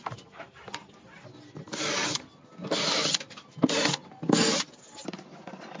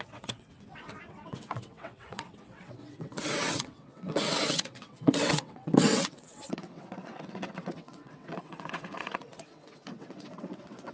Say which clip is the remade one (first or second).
second